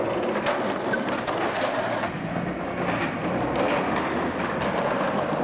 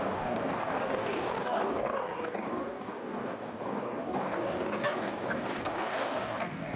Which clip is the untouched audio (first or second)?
first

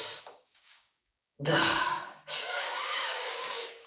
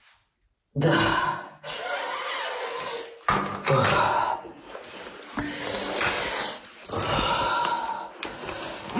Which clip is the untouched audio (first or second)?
second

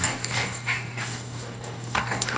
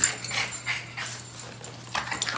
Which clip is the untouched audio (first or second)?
second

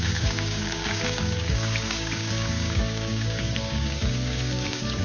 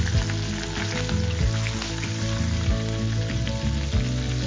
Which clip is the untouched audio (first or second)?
second